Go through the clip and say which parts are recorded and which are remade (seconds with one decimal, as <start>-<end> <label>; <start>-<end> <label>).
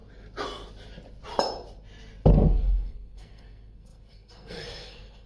0.0-2.3 recorded; 2.3-5.3 remade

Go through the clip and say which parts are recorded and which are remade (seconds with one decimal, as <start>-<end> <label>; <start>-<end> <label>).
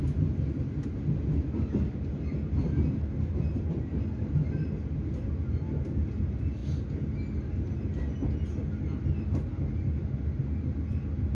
0.0-11.3 recorded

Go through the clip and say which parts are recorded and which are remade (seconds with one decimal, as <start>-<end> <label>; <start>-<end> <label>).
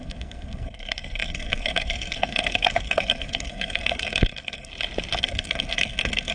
0.0-4.7 remade; 4.7-5.2 recorded; 5.2-6.3 remade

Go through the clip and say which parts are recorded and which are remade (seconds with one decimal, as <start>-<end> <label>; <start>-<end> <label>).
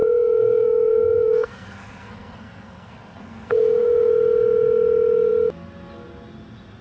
0.0-4.1 remade; 4.1-6.8 recorded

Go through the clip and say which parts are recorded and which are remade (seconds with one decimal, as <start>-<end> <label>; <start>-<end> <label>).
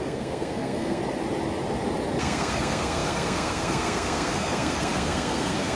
0.0-1.0 remade; 1.0-2.2 recorded; 2.2-5.8 remade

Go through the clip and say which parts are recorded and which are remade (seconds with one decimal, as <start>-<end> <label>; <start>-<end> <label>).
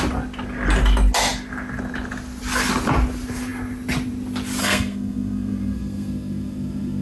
0.0-4.6 recorded; 4.6-7.0 remade